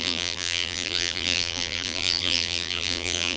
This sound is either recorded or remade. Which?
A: remade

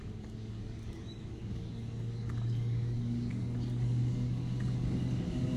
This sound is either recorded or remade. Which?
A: remade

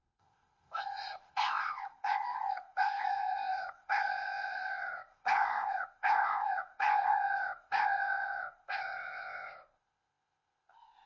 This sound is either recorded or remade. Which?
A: remade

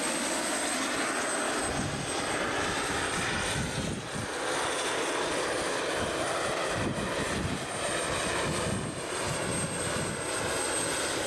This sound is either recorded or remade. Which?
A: recorded